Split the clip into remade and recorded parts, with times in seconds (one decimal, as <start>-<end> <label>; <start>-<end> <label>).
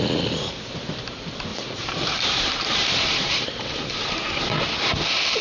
0.0-1.5 recorded; 1.5-4.7 remade; 4.7-5.4 recorded